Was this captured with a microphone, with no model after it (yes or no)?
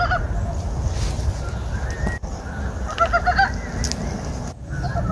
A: yes